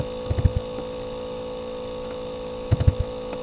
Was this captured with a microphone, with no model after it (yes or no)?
no